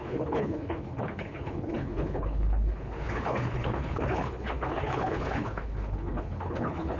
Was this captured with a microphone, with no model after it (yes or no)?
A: no